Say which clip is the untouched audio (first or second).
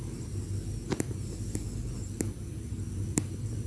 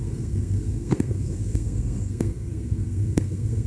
first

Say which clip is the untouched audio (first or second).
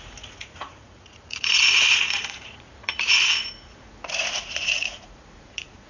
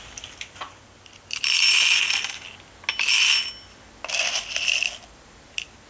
second